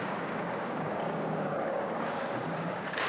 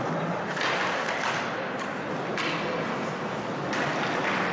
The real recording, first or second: second